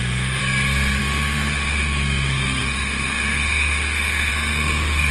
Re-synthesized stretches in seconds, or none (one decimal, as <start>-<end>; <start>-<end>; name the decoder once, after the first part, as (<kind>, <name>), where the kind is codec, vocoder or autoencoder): 0.0-0.4 (autoencoder, DAC-VAE); 1.0-5.1